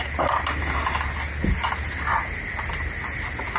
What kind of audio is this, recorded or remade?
recorded